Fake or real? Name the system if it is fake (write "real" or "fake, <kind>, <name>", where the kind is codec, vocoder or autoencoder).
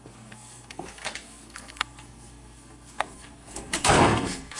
fake, codec, SNAC